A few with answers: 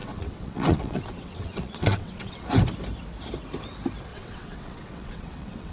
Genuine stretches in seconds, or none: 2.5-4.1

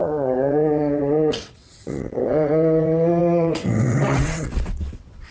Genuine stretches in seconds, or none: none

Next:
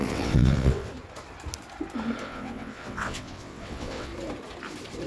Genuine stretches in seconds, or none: 0.9-2.2; 4.1-5.1